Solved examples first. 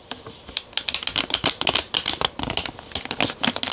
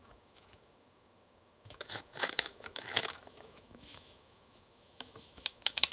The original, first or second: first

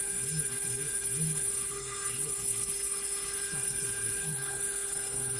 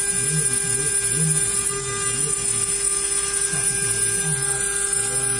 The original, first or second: second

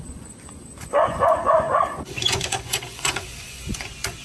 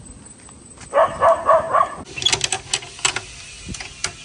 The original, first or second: second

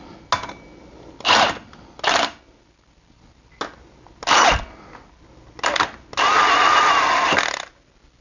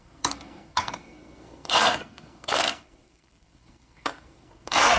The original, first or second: first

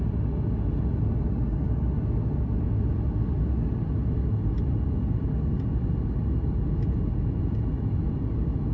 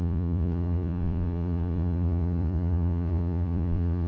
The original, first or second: first